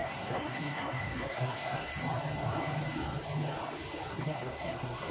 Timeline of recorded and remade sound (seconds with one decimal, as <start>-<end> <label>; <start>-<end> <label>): 0.0-1.9 remade; 1.9-4.1 recorded; 4.1-5.1 remade